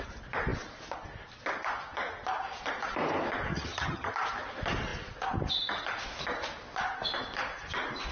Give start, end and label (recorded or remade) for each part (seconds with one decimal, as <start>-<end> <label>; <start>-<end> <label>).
0.0-3.5 recorded; 3.5-4.1 remade; 4.1-8.1 recorded